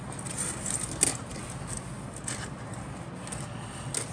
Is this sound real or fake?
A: real